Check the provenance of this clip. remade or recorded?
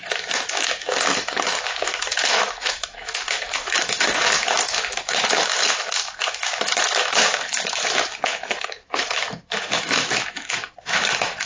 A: remade